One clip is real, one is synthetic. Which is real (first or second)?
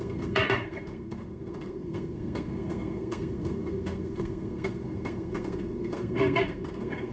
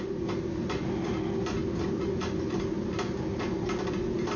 second